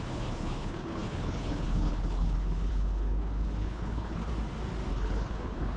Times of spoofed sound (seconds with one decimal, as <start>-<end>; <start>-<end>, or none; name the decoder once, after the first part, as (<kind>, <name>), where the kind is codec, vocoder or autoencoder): 0.0-4.3 (codec, HILCodec); 4.9-5.8